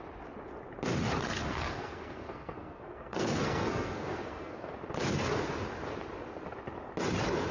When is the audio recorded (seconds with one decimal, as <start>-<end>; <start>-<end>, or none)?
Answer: 0.0-1.4; 4.7-7.5